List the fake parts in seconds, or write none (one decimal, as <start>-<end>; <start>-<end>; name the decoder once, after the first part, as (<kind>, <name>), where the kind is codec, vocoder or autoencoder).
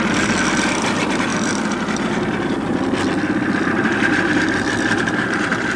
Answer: 0.0-1.3 (vocoder, BigVGAN v2); 4.1-5.8